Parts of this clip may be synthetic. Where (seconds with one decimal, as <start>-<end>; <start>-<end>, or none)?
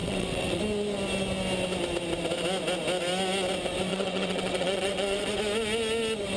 0.0-0.6; 3.9-5.4